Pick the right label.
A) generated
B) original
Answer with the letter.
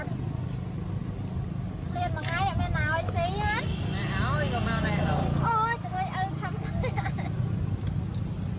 B